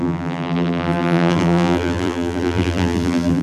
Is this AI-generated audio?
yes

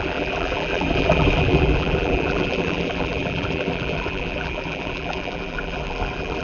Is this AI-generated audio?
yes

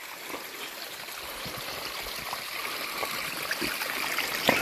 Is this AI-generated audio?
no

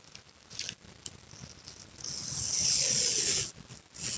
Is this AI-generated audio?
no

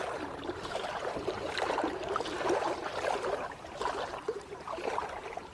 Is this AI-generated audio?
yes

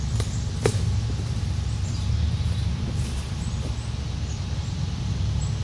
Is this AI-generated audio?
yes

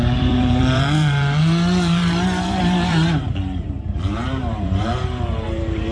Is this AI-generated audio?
yes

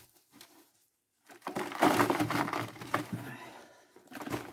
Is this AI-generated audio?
yes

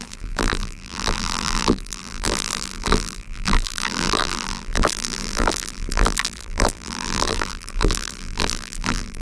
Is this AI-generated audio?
yes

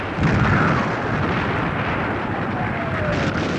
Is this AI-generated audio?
yes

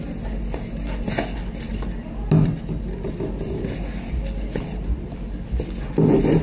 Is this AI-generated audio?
no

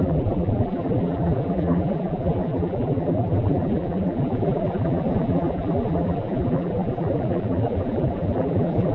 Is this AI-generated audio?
yes